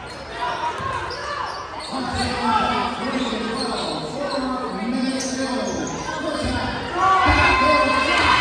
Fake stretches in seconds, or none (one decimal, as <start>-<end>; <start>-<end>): 1.2-1.8